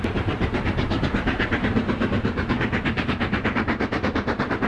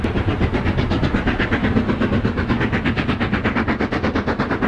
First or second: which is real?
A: second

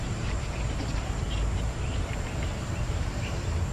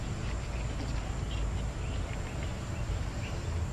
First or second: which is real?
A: second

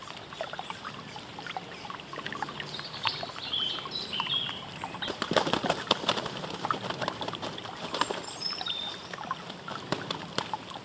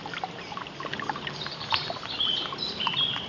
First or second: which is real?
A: second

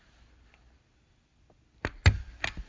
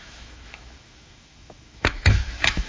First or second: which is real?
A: first